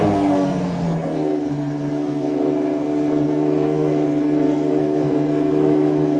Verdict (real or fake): fake